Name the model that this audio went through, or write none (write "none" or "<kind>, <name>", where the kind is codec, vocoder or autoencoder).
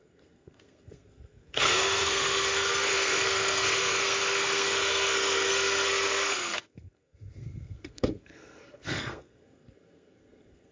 codec, SNAC